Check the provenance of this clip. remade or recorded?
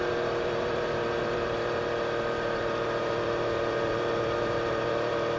remade